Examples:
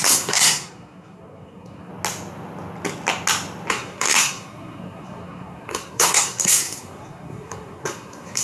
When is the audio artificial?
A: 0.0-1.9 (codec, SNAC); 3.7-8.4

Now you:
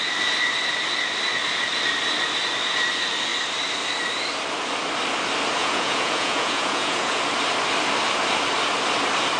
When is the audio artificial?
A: 5.6-7.2 (vocoder, Vocos)

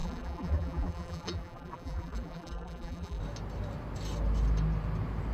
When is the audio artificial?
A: 0.0-3.2 (vocoder, BigVGAN v2)

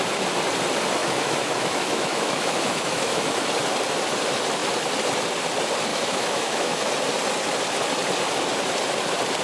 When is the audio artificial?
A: 1.0-3.5 (autoencoder, DAC-VAE); 5.9-6.9

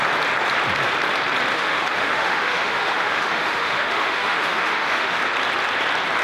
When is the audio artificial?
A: 1.5-5.2 (autoencoder, DAC-VAE)

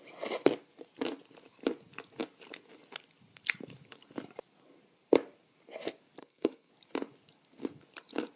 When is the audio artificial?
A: 6.2-6.7 (codec, SNAC)

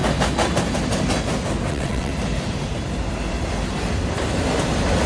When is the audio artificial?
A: 1.7-2.1 (vocoder, WaveNeXt)